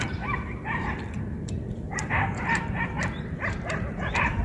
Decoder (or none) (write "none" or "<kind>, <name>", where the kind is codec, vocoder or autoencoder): vocoder, BigVGAN v2